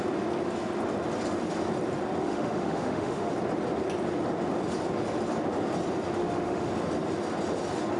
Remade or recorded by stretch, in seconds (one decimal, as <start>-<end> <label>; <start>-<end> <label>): 0.0-2.2 recorded; 2.2-3.3 remade; 3.3-6.2 recorded; 6.2-6.7 remade; 6.7-8.0 recorded